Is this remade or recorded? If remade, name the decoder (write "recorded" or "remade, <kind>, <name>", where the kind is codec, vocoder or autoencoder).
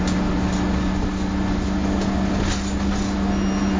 recorded